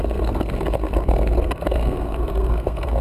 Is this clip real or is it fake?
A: fake